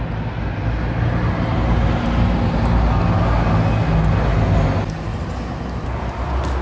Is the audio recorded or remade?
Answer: recorded